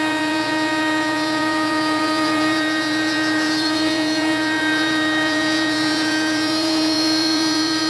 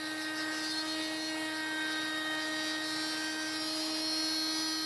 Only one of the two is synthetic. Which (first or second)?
first